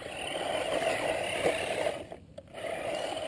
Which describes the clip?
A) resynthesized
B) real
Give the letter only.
A